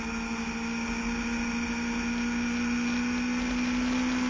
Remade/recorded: recorded